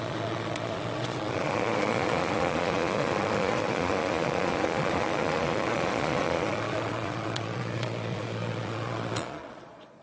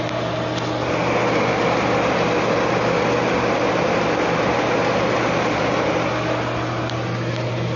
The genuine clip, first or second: second